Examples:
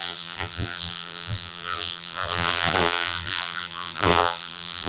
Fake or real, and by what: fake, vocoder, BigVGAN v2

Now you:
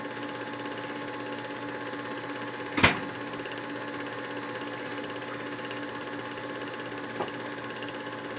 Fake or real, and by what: real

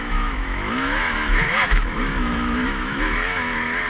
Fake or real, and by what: fake, autoencoder, DAC-VAE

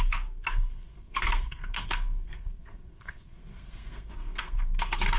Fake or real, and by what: fake, codec, SNAC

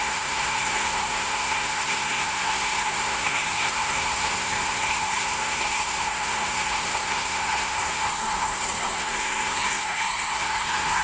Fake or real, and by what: fake, codec, SNAC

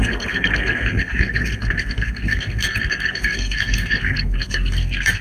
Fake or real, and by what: fake, codec, SNAC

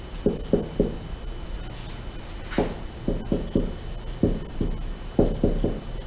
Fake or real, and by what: real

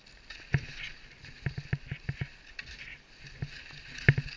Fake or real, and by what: real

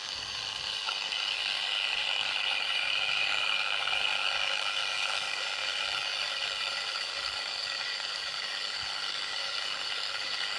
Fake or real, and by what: fake, codec, DAC